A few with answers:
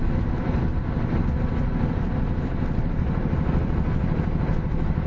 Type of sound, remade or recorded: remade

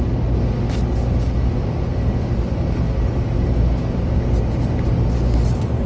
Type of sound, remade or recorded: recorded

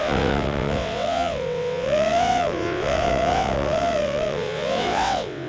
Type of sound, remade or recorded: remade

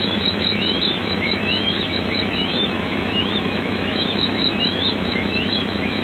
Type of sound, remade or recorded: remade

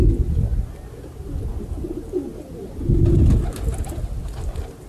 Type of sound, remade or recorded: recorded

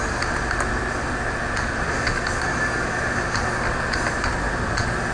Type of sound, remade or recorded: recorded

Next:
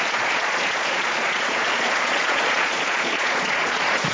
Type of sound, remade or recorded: remade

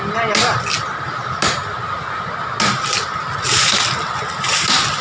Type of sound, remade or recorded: recorded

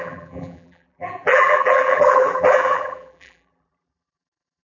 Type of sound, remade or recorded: remade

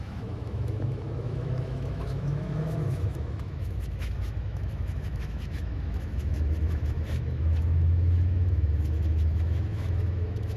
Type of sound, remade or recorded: remade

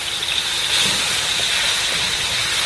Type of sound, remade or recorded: recorded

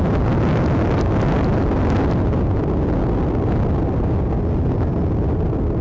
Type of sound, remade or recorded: recorded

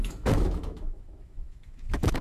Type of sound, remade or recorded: remade